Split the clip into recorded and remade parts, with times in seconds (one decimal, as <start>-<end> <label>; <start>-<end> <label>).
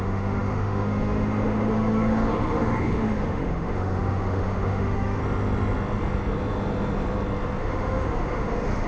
0.0-5.2 remade; 5.2-7.6 recorded; 7.6-8.9 remade